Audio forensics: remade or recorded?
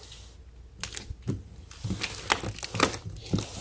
recorded